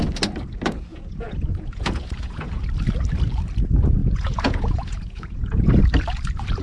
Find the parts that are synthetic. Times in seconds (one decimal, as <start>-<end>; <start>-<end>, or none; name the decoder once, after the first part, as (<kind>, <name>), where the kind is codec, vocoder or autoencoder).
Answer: 0.9-2.6 (vocoder, Vocos); 4.0-5.8